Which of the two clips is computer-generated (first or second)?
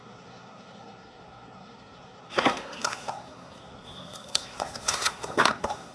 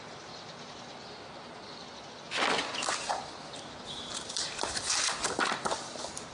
first